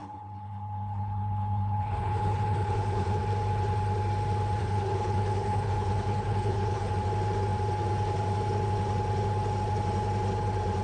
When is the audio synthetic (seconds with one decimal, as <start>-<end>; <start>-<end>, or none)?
0.0-3.2; 4.6-6.9

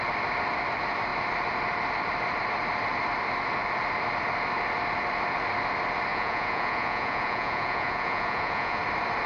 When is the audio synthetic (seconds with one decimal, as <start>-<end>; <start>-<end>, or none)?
6.1-8.8

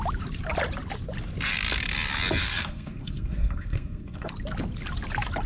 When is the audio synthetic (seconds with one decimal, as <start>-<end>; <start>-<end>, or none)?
2.4-4.3

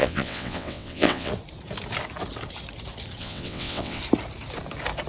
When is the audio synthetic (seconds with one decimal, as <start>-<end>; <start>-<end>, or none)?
0.0-1.3; 3.2-4.0